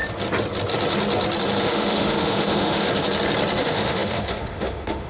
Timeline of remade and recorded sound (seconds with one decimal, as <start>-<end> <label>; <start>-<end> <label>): 0.0-1.6 recorded; 1.6-2.9 remade; 2.9-3.6 recorded; 3.6-5.1 remade